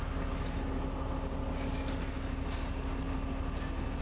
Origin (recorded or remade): recorded